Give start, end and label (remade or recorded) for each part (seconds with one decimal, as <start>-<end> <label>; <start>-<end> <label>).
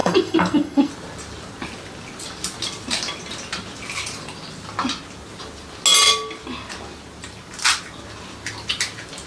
0.0-0.9 remade; 0.9-9.3 recorded